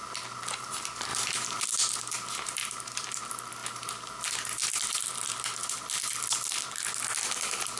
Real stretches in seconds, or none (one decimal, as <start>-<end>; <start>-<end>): 0.0-1.1; 1.7-2.6; 3.2-3.6; 4.1-7.8